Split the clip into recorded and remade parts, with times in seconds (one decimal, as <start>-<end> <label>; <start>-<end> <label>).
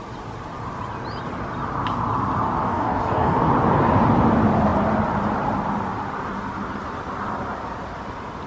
0.0-2.6 recorded; 2.6-3.5 remade; 3.5-8.5 recorded